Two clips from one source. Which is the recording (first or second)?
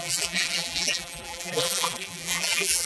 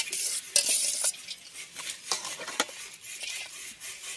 second